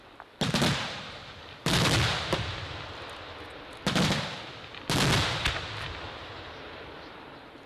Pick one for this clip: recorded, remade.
recorded